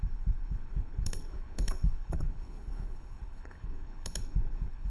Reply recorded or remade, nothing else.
remade